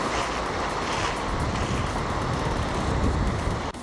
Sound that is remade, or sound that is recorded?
recorded